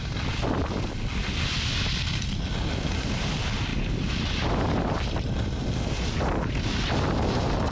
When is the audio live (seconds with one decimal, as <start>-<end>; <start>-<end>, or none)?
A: 0.0-7.7